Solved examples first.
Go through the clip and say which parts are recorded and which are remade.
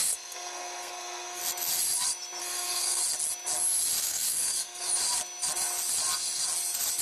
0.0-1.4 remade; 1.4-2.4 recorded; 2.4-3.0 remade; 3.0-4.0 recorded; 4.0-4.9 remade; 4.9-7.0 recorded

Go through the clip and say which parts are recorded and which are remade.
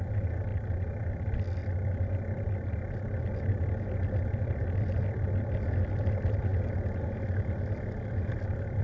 0.0-8.8 recorded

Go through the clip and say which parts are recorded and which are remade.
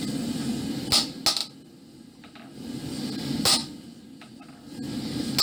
0.0-5.4 recorded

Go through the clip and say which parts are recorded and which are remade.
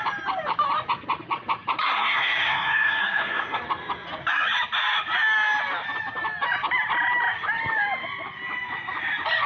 0.0-1.8 recorded; 1.8-3.6 remade; 3.6-9.5 recorded